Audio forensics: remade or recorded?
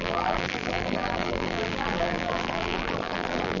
remade